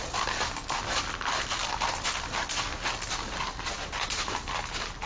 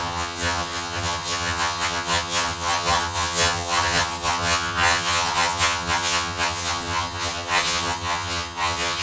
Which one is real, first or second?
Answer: first